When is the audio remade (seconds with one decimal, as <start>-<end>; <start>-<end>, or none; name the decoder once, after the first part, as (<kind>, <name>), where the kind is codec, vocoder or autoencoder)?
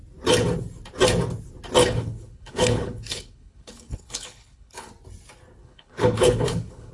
1.8-4.9 (codec, HILCodec); 5.6-6.9